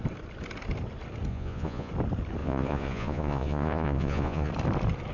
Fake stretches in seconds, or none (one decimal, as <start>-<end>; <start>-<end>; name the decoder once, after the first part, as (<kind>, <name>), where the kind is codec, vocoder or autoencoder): 1.3-1.9 (vocoder, Vocos); 2.4-4.5